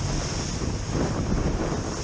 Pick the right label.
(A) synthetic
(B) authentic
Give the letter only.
B